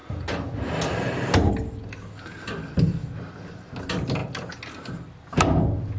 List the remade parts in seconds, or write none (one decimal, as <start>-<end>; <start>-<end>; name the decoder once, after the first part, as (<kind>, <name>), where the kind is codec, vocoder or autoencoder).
none

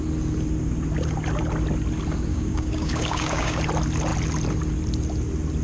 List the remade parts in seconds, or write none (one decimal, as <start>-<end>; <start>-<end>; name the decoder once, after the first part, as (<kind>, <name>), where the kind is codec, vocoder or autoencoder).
2.3-3.6 (codec, DAC)

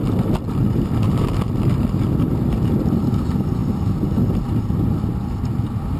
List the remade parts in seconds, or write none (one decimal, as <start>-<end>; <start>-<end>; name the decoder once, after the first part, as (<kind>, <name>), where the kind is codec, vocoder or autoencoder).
none

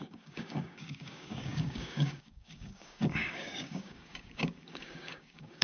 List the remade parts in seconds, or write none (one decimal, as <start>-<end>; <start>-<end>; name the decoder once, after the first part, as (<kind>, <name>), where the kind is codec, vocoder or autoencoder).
0.0-5.6 (codec, DAC)

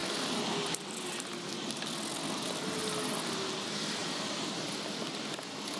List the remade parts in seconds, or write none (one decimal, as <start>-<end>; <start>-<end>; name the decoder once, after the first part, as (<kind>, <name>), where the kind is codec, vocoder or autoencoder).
none